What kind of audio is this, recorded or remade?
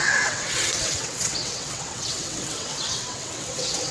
remade